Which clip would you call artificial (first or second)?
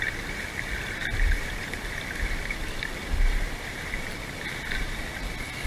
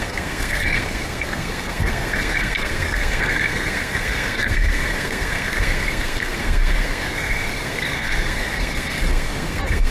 second